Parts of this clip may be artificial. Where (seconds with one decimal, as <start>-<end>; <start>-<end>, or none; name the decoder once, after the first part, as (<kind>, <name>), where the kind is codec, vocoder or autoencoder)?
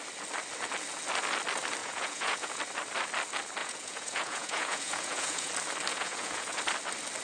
1.8-2.6 (vocoder, Vocos); 3.6-5.5; 5.9-6.6